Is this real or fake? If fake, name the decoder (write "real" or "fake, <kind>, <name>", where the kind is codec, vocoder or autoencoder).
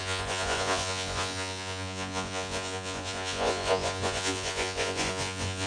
fake, vocoder, Vocos